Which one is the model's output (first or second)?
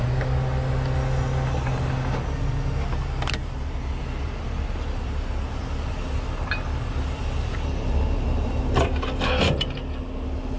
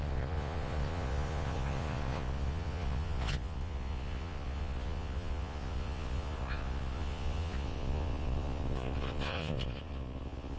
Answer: second